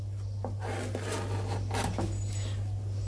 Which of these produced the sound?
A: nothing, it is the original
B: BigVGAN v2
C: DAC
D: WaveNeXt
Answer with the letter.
A